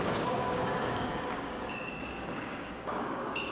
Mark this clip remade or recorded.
remade